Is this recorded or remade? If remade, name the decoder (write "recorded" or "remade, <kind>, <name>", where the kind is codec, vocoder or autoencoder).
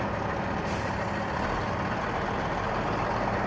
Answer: recorded